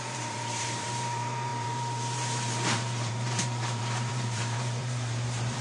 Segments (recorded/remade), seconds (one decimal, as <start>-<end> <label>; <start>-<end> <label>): 0.0-5.6 remade